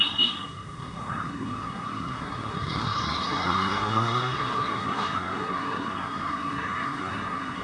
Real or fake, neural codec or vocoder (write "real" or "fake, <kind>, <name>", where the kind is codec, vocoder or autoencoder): fake, codec, SNAC